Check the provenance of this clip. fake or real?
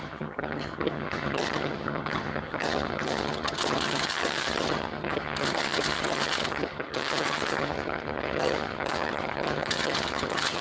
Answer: fake